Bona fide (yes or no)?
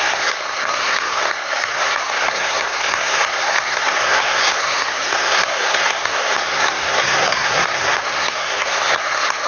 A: no